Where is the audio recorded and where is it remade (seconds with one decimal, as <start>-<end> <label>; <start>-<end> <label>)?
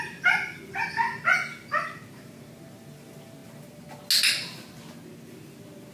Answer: 0.0-5.9 recorded